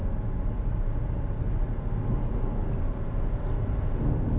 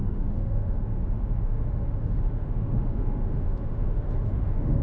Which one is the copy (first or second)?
second